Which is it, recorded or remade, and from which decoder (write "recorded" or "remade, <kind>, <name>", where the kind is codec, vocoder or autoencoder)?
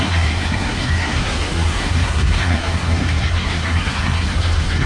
remade, codec, SNAC